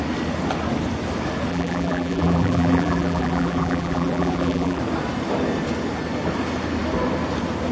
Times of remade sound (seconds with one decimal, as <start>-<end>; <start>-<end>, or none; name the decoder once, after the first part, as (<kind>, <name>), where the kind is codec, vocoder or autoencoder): 1.5-4.8 (vocoder, BigVGAN v2)